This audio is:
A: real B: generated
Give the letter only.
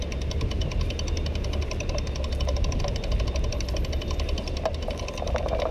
A